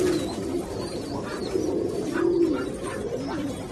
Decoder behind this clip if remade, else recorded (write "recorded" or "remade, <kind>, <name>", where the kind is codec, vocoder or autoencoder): recorded